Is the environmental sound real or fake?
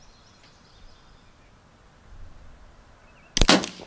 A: real